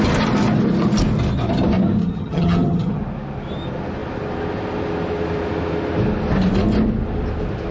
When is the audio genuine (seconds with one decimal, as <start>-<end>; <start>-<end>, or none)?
0.0-2.0; 3.0-7.7